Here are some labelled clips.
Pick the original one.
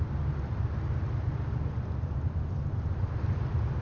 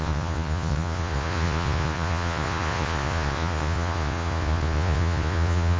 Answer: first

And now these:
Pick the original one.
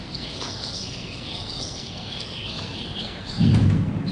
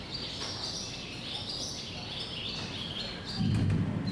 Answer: second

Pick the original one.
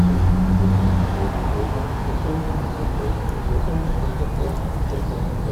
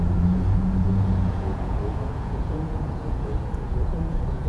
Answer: first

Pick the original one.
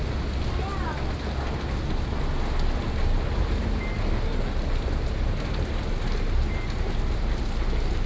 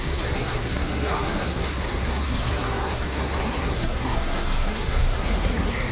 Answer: first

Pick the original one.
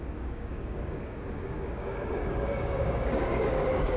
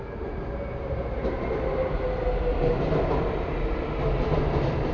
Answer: second